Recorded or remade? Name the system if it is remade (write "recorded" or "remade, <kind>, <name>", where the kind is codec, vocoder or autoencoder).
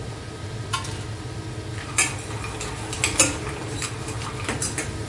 recorded